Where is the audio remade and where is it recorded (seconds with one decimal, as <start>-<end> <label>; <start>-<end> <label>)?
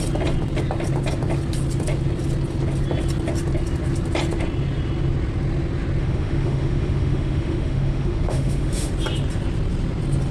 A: 0.0-6.0 recorded; 6.0-8.9 remade; 8.9-10.3 recorded